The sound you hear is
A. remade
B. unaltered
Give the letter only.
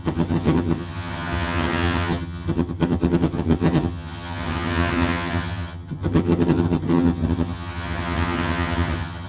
A